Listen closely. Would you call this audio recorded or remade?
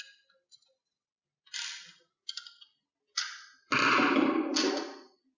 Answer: recorded